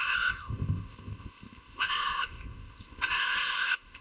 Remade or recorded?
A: remade